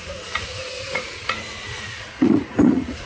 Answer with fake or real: fake